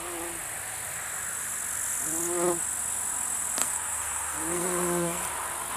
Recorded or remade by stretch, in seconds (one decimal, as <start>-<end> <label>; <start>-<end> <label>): 0.0-3.6 recorded; 3.6-5.2 remade; 5.2-5.8 recorded